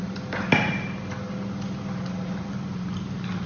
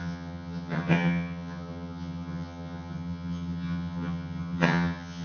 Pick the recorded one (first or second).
first